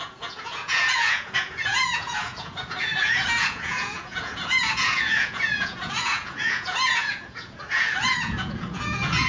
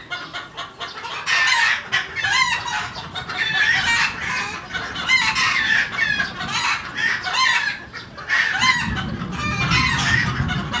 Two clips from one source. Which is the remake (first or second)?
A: first